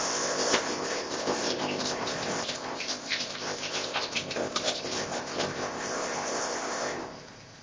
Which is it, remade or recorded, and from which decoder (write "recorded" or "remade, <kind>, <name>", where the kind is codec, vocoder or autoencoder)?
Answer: remade, codec, ZipCodec